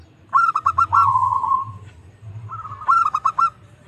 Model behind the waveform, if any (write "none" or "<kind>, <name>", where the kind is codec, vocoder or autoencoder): vocoder, BigVGAN v2